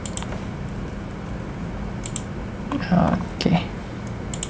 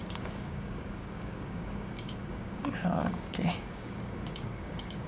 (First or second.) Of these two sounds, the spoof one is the second